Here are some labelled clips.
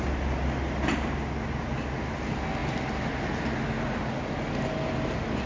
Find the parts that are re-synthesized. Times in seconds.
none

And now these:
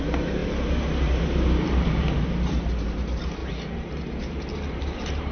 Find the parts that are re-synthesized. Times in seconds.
0.0-3.4 (vocoder, BigVGAN v2); 4.7-5.3

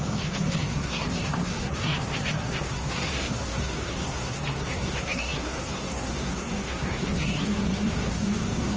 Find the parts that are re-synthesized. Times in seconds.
0.0-8.8 (codec, SNAC)

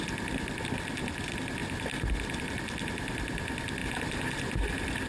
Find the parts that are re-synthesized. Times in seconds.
1.6-2.4 (vocoder, BigVGAN v2)

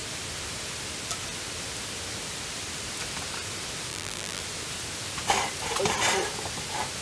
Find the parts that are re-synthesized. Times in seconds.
3.9-4.4 (vocoder, BigVGAN v2)

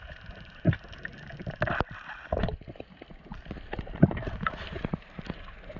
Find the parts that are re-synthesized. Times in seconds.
0.0-1.1 (vocoder, BigVGAN v2); 4.6-5.8

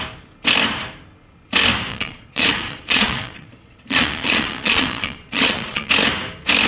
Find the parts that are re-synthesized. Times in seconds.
1.9-5.9 (vocoder, Vocos)

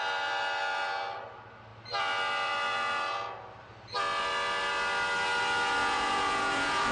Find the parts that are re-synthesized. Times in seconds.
5.8-6.9 (vocoder, Vocos)